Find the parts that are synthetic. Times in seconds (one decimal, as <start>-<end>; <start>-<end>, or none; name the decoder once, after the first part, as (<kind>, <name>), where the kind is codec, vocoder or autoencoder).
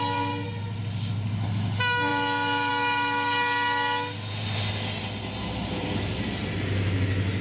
none